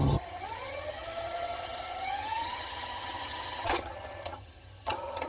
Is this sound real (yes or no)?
no